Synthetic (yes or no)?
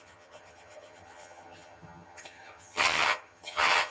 yes